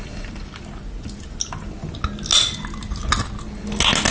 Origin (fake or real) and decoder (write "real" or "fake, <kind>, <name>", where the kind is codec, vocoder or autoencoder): real